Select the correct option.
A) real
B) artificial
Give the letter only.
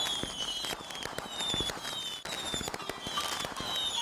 A